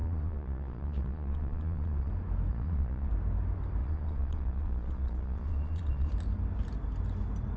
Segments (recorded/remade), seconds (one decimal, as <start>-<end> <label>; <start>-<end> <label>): 0.0-2.1 remade; 2.1-2.5 recorded; 2.5-3.1 remade; 3.1-3.8 recorded; 3.8-6.1 remade; 6.1-7.6 recorded